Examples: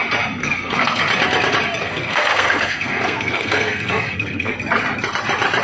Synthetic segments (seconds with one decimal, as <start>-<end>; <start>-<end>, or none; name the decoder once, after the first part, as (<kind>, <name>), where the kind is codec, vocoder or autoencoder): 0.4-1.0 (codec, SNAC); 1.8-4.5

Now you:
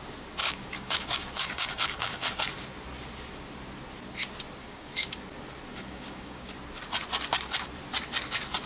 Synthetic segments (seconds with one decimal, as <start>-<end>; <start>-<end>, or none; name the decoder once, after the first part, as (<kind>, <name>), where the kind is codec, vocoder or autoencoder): 0.4-2.3 (codec, DAC); 4.6-5.2; 5.7-6.5

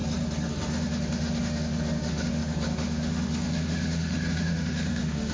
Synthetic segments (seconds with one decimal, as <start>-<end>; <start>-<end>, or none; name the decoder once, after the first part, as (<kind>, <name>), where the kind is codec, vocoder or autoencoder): 0.5-5.3 (autoencoder, DAC-VAE)

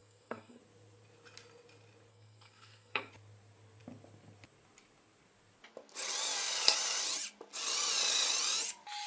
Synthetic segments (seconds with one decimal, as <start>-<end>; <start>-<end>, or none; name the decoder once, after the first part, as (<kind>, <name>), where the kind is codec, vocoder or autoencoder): 0.0-0.6 (codec, SNAC); 2.1-3.1

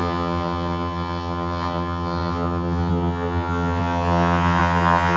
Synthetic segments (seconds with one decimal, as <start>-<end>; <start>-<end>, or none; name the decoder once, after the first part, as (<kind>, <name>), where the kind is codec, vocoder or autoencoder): 0.0-5.2 (vocoder, HiFi-GAN)

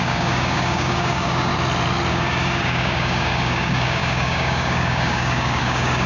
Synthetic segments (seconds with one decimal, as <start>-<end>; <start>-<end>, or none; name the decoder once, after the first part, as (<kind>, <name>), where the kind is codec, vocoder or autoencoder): 0.0-1.5 (codec, DAC); 2.1-6.1